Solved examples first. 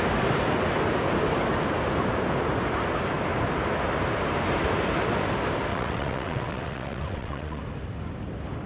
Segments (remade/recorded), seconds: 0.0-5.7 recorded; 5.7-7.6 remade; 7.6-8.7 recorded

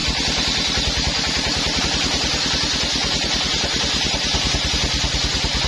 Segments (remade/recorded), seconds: 0.0-3.0 recorded; 3.0-4.7 remade; 4.7-5.7 recorded

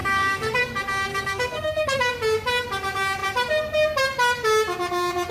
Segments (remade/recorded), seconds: 0.0-0.6 remade; 0.6-1.1 recorded; 1.1-2.1 remade; 2.1-5.3 recorded